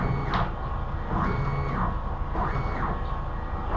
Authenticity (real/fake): real